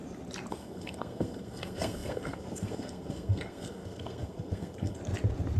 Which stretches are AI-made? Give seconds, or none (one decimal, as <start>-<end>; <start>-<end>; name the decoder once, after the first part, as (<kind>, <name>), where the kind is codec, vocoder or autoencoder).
0.5-5.0 (codec, SNAC)